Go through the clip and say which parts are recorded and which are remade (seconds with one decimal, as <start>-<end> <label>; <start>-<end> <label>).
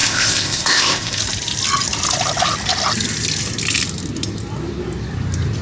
0.0-1.2 remade; 1.2-5.6 recorded